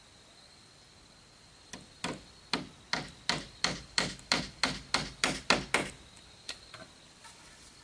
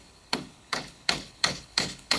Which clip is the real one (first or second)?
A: first